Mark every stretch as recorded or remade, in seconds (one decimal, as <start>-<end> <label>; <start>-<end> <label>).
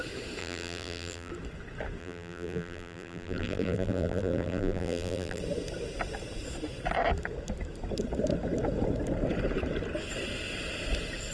0.0-0.4 recorded; 0.4-1.3 remade; 1.3-2.0 recorded; 2.0-5.4 remade; 5.4-11.3 recorded